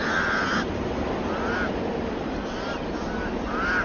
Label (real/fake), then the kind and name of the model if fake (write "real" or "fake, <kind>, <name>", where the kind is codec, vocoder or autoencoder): real